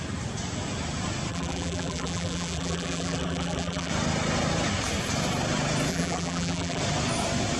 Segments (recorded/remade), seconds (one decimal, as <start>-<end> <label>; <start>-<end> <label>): 0.0-1.3 recorded; 1.3-3.9 remade; 3.9-5.9 recorded; 5.9-6.8 remade; 6.8-7.6 recorded